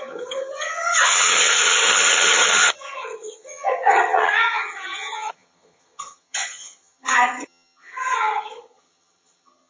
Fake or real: fake